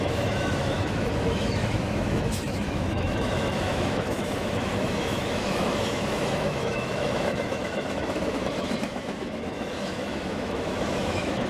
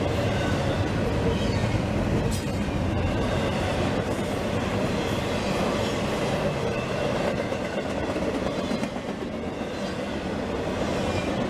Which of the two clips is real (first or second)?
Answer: second